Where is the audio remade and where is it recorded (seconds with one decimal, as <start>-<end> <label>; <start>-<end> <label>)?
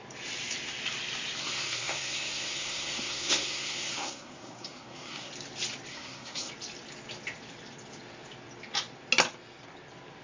0.0-1.4 recorded; 1.4-5.3 remade; 5.3-5.9 recorded; 5.9-6.5 remade; 6.5-10.2 recorded